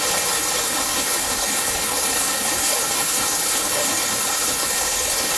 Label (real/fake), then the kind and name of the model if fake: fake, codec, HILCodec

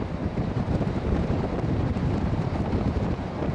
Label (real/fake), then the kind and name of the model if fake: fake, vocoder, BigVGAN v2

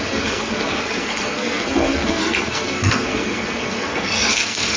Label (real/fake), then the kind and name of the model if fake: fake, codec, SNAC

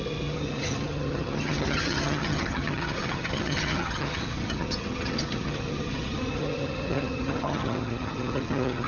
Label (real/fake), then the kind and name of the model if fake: fake, vocoder, HiFi-GAN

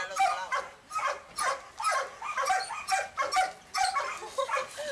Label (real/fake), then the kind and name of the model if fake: real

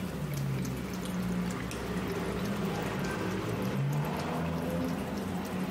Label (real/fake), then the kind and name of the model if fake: real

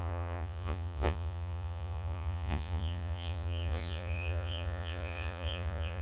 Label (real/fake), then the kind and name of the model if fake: fake, vocoder, Vocos